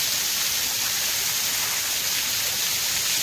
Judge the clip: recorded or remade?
recorded